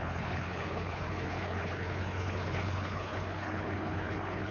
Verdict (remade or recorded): remade